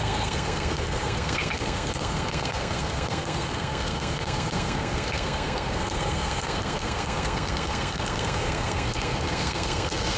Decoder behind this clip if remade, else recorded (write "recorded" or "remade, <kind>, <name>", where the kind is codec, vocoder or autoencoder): remade, codec, SNAC